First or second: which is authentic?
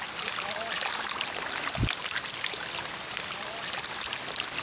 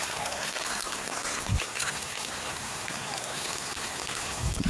first